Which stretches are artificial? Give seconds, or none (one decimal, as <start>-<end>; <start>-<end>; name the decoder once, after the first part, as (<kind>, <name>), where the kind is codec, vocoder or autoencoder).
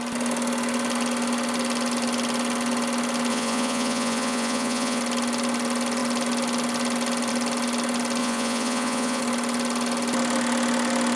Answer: 3.3-5.0 (vocoder, Vocos); 8.2-9.2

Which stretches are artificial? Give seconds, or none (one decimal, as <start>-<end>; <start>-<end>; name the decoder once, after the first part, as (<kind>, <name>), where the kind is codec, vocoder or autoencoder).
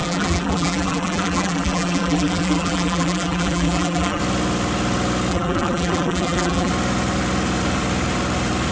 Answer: 0.0-4.2 (vocoder, BigVGAN v2); 5.3-6.7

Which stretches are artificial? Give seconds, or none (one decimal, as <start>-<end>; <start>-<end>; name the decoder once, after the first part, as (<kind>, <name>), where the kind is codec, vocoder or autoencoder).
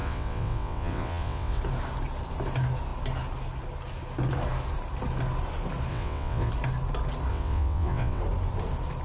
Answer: 0.0-1.6 (vocoder, WaveNeXt); 5.9-6.5; 7.3-8.2